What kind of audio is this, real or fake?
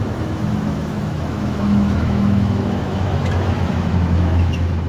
fake